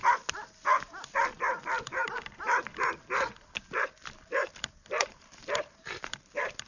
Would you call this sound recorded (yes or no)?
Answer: no